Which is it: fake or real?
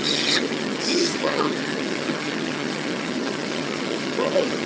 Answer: fake